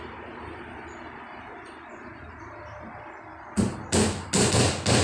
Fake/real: real